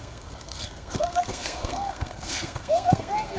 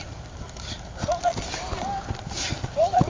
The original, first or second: second